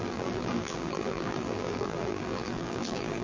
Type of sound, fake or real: fake